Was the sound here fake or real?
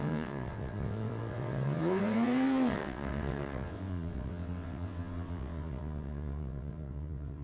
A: fake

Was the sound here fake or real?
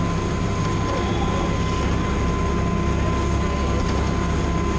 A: real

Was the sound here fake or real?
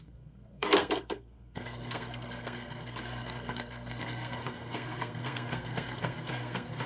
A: fake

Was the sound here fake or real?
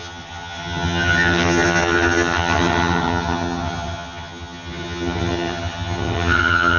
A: fake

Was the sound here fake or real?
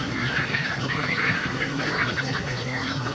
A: fake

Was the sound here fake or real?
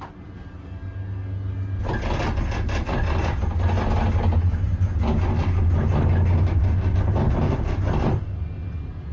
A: real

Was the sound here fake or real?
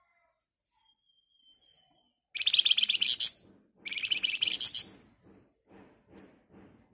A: real